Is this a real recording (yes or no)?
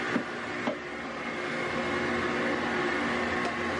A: yes